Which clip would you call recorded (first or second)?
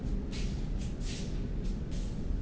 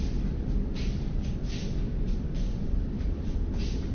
first